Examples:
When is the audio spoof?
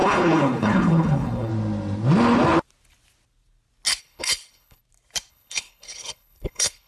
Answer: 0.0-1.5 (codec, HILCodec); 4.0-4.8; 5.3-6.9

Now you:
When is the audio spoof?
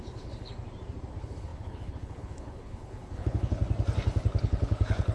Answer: 0.0-0.5 (codec, HILCodec); 1.1-3.6; 4.4-5.1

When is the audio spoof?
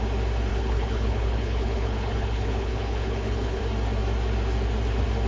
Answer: 0.5-3.6 (codec, HILCodec)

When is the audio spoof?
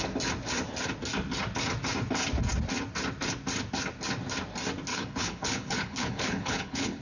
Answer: 4.9-7.0 (codec, HILCodec)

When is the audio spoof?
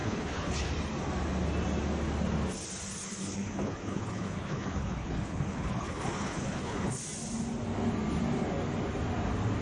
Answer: 0.0-0.7 (codec, HILCodec); 3.0-7.0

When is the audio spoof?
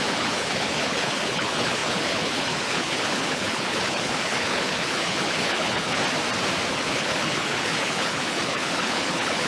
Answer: 0.0-6.0 (codec, HILCodec); 6.7-9.5